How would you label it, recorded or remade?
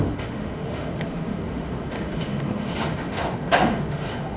remade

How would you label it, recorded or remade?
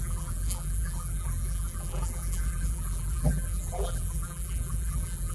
remade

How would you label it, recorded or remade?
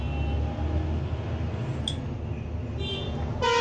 recorded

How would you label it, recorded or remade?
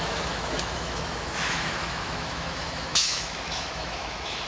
remade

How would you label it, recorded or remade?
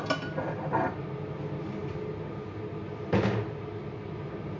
recorded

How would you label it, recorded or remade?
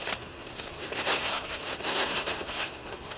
remade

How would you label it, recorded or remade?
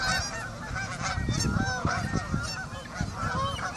recorded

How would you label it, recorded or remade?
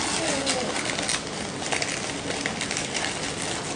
recorded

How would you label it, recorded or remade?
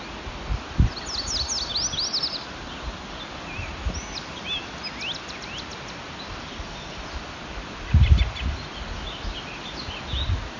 recorded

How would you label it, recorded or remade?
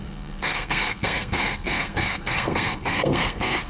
remade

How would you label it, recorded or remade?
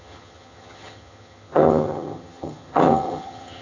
remade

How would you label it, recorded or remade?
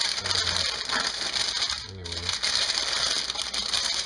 recorded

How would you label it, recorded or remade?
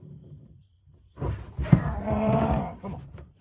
remade